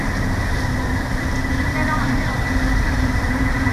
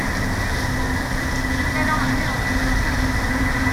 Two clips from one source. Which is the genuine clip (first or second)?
second